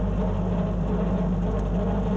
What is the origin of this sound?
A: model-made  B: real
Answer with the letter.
B